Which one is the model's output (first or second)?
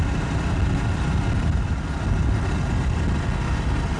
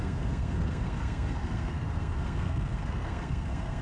second